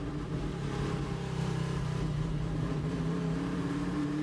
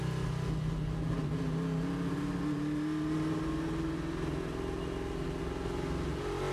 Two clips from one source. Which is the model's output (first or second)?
first